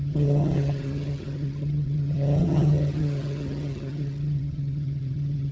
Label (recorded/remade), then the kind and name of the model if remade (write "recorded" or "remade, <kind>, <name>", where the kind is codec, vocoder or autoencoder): remade, vocoder, HiFi-GAN